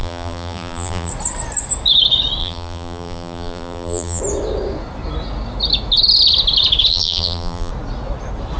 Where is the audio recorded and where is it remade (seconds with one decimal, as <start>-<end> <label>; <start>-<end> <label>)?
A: 0.0-1.1 remade; 1.1-2.4 recorded; 2.4-4.2 remade; 4.2-6.9 recorded; 6.9-7.7 remade; 7.7-8.6 recorded